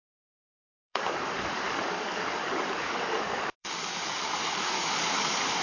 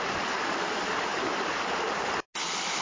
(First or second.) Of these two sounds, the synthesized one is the first